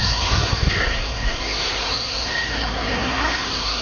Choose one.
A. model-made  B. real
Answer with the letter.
A